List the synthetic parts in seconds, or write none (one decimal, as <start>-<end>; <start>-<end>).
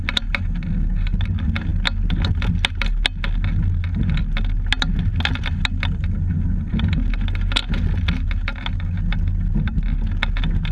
none